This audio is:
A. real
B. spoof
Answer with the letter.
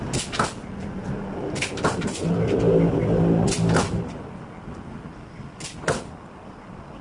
A